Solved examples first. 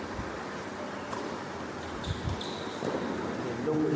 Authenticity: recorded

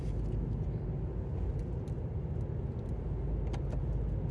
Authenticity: recorded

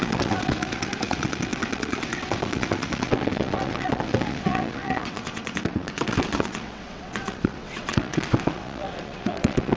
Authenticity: remade